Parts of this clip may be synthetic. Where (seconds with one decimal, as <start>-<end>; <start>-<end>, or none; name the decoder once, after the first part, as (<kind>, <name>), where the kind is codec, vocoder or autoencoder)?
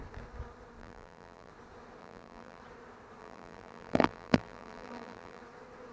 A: 0.8-1.5 (vocoder, BigVGAN v2); 2.0-2.6; 3.2-5.4